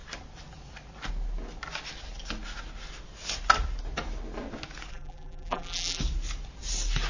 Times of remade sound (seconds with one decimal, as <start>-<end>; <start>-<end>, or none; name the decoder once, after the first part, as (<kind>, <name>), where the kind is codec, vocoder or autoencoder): 4.9-6.0 (vocoder, BigVGAN v2)